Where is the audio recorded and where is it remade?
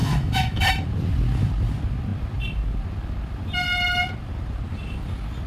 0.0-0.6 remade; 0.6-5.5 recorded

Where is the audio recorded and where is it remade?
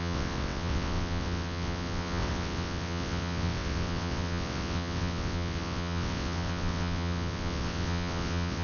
0.0-8.6 remade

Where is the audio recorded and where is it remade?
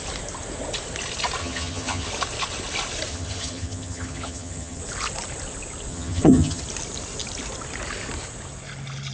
0.0-1.4 recorded; 1.4-2.1 remade; 2.1-3.1 recorded; 3.1-4.8 remade; 4.8-5.9 recorded; 5.9-6.6 remade; 6.6-9.1 recorded